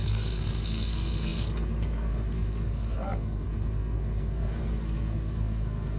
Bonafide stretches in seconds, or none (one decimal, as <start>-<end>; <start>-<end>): none